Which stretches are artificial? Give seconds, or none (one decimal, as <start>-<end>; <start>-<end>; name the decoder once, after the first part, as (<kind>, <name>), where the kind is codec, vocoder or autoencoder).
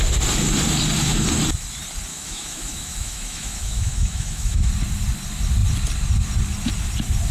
2.1-4.7 (autoencoder, DAC-VAE)